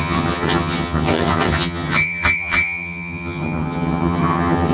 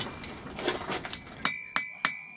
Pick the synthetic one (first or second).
first